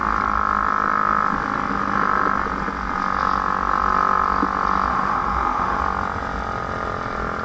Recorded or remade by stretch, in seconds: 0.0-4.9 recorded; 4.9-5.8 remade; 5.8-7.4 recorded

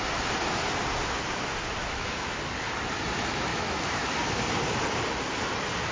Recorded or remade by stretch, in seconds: 0.0-1.8 recorded; 1.8-2.4 remade; 2.4-3.5 recorded; 3.5-4.1 remade; 4.1-5.9 recorded

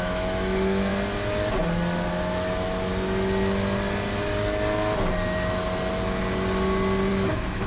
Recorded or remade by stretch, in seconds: 0.0-0.9 remade; 0.9-2.1 recorded; 2.1-2.9 remade; 2.9-7.1 recorded; 7.1-7.7 remade

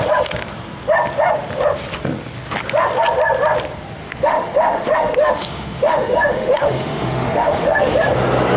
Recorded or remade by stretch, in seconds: 0.0-4.0 recorded; 4.0-7.9 remade; 7.9-8.6 recorded

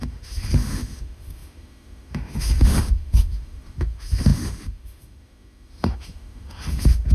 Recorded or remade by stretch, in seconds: 0.0-7.1 remade

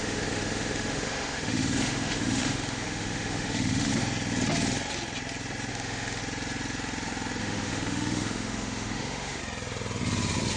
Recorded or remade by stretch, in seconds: 0.0-3.9 remade; 3.9-5.7 recorded; 5.7-6.2 remade; 6.2-7.4 recorded; 7.4-9.4 remade; 9.4-10.6 recorded